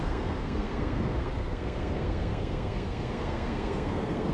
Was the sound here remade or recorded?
remade